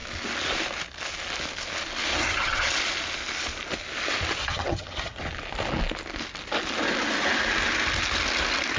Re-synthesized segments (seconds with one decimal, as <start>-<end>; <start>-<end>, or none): 2.1-2.7; 4.4-5.2